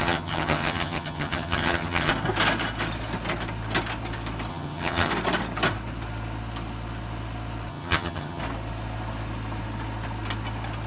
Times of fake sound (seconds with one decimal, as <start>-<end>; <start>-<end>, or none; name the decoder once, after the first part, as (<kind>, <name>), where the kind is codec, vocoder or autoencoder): 0.0-2.1 (vocoder, HiFi-GAN); 4.5-5.1; 7.7-8.4